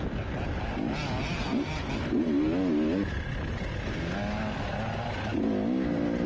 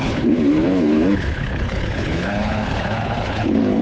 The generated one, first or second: second